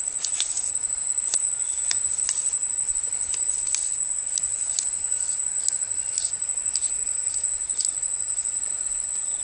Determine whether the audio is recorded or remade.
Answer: recorded